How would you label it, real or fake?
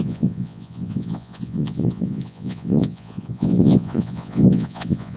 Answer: fake